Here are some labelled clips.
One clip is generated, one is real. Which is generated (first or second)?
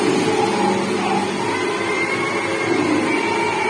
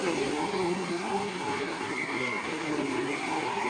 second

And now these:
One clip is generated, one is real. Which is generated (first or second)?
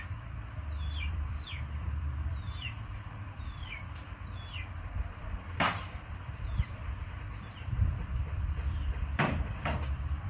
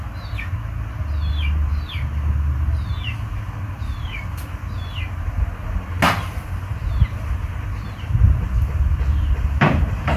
first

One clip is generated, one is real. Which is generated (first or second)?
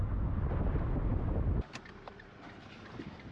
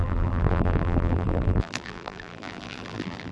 second